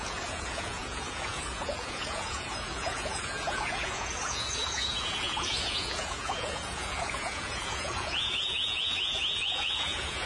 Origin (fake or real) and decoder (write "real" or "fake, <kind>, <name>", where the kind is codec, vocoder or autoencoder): fake, vocoder, Vocos